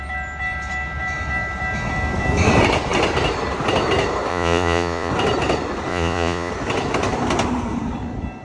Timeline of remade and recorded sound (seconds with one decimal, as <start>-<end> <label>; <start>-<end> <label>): 0.0-4.3 recorded; 4.3-5.1 remade; 5.1-5.9 recorded; 5.9-6.5 remade; 6.5-8.4 recorded